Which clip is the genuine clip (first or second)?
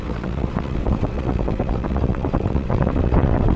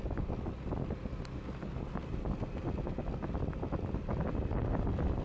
second